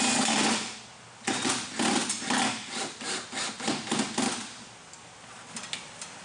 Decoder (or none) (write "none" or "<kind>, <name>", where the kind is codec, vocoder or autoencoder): none